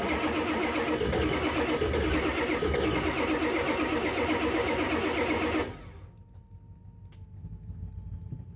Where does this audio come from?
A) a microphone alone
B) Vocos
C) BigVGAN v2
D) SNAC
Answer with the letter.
A